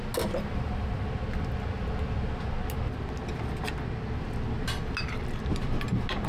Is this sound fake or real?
real